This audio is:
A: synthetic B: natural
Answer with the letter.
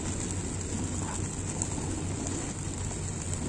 B